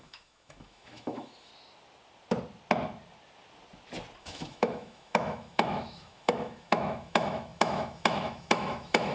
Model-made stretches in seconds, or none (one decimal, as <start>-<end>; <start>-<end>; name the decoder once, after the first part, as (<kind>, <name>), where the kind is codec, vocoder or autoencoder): 0.0-1.5 (autoencoder, DAC-VAE); 4.2-9.1